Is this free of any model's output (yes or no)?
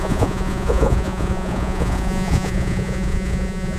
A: no